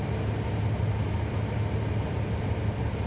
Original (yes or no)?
yes